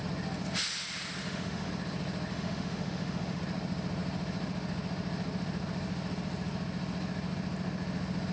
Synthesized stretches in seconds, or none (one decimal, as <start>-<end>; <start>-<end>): 1.2-1.7; 2.3-3.4